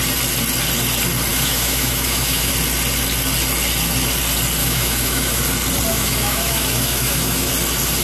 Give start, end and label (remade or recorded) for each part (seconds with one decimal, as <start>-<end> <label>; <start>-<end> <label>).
0.0-1.3 recorded; 1.3-2.5 remade; 2.5-4.6 recorded; 4.6-5.4 remade; 5.4-5.9 recorded; 5.9-7.5 remade; 7.5-8.0 recorded